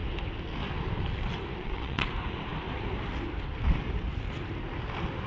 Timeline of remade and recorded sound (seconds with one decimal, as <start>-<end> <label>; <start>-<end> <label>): 0.0-1.6 recorded; 1.6-2.1 remade; 2.1-5.3 recorded